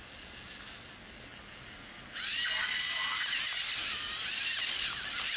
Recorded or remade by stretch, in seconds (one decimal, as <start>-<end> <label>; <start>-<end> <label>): 0.0-5.4 recorded

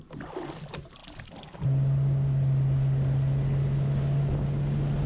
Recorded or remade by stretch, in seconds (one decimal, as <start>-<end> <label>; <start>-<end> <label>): 0.0-5.1 recorded

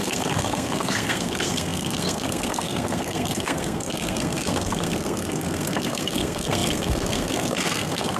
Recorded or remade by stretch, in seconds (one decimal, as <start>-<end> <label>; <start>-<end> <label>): 0.0-8.2 remade

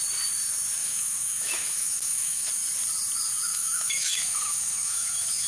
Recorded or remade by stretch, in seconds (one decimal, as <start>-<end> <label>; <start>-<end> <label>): 0.0-0.8 recorded; 0.8-2.5 remade; 2.5-3.5 recorded; 3.5-5.5 remade

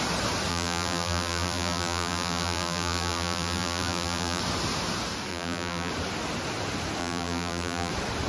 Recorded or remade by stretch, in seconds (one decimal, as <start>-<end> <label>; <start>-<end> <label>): 0.0-0.5 recorded; 0.5-4.4 remade; 4.4-5.3 recorded; 5.3-5.9 remade; 5.9-7.0 recorded; 7.0-7.9 remade; 7.9-8.3 recorded

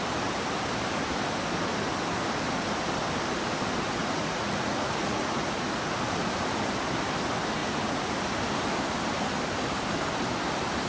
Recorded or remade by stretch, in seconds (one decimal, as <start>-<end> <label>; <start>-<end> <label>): 0.0-4.0 recorded; 4.0-5.9 remade; 5.9-7.6 recorded; 7.6-8.1 remade; 8.1-10.9 recorded